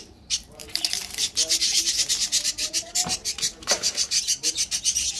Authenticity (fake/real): fake